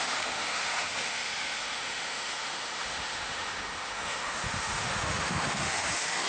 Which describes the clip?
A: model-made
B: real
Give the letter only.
A